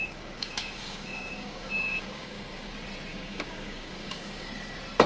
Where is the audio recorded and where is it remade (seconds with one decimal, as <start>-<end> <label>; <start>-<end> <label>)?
0.0-2.7 remade; 2.7-3.1 recorded; 3.1-4.5 remade; 4.5-5.1 recorded